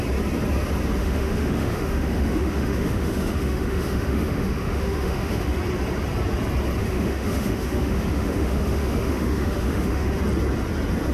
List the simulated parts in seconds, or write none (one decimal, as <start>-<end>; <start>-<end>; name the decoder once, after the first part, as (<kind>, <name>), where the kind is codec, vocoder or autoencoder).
1.0-5.6 (autoencoder, DAC-VAE); 6.8-10.2